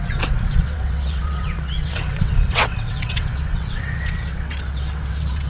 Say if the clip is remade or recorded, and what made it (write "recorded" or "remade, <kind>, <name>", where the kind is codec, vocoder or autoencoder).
remade, vocoder, WaveNeXt